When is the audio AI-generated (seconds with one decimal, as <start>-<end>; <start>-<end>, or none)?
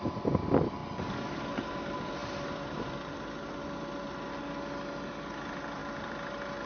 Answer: none